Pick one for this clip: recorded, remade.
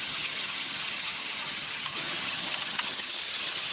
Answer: remade